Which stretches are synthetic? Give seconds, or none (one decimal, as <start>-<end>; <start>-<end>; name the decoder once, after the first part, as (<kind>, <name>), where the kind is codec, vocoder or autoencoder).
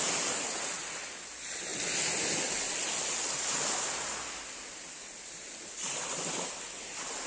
1.7-2.3 (vocoder, BigVGAN v2)